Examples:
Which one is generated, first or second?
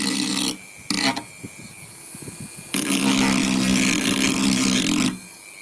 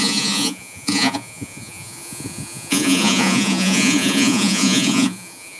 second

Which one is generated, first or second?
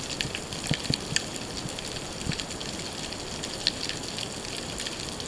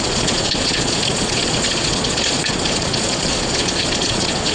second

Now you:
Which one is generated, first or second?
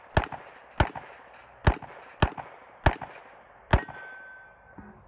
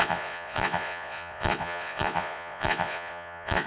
second